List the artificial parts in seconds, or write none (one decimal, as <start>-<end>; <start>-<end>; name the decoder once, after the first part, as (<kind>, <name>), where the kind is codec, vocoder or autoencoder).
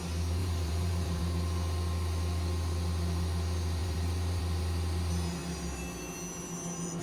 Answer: 0.4-1.2 (vocoder, BigVGAN v2); 3.8-4.4